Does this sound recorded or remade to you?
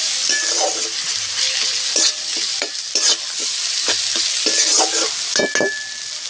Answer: recorded